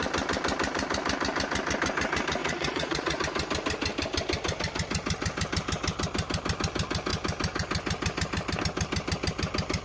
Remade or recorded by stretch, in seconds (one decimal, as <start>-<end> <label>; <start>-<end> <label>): 0.0-2.4 recorded; 2.4-3.2 remade; 3.2-9.8 recorded